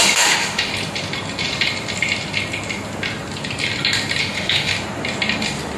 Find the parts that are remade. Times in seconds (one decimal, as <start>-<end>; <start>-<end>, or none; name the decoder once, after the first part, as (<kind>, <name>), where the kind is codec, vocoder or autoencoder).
0.0-0.7 (autoencoder, DAC-VAE); 4.2-4.7